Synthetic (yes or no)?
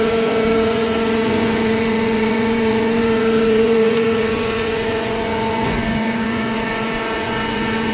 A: yes